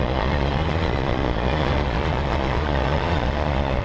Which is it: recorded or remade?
remade